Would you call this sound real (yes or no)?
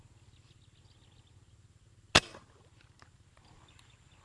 yes